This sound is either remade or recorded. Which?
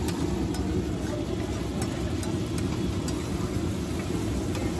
recorded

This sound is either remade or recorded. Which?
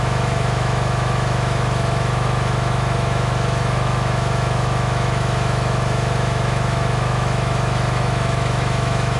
remade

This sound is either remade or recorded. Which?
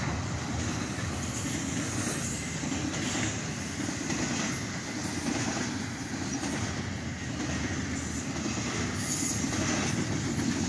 recorded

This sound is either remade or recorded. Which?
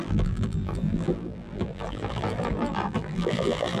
remade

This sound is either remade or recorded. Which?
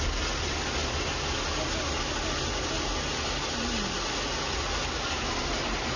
recorded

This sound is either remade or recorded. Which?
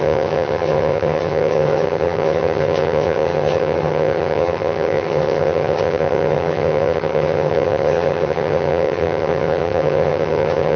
remade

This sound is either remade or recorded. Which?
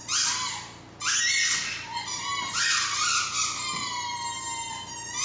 recorded